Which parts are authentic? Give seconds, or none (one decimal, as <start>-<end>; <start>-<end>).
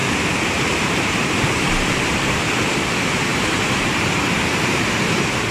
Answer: 2.4-3.3; 5.0-5.5